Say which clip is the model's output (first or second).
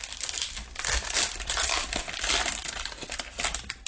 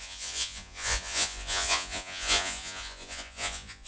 second